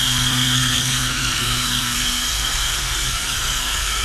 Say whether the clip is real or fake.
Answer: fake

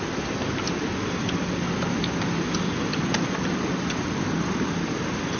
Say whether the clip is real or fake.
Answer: real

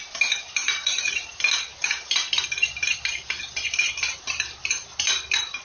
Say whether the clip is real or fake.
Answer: real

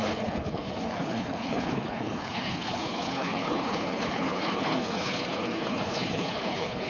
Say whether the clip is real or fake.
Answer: fake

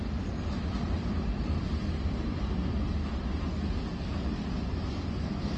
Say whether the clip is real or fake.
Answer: real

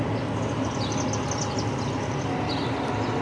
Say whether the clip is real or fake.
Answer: real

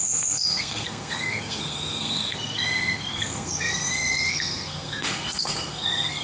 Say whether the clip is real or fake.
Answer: fake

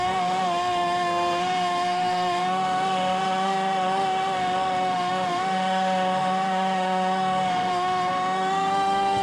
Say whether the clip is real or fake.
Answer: fake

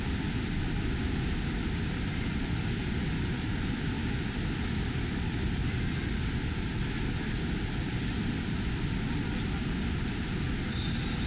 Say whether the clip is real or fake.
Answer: real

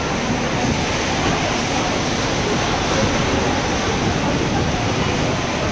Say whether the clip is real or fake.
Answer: real